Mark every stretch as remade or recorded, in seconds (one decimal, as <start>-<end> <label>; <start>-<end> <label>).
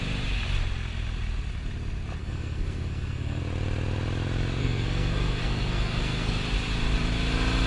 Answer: 0.0-2.2 recorded; 2.2-3.4 remade; 3.4-4.6 recorded; 4.6-6.4 remade; 6.4-7.7 recorded